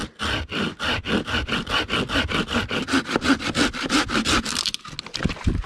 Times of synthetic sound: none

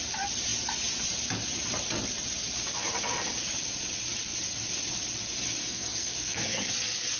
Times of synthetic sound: 5.6-6.7 (codec, SNAC)

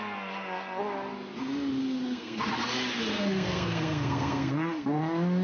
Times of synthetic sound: 1.8-2.4 (codec, SNAC); 3.1-5.0